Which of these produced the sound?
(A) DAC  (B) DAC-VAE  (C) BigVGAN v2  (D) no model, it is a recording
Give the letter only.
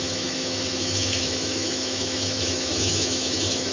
B